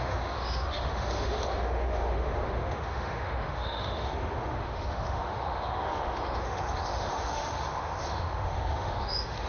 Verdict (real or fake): fake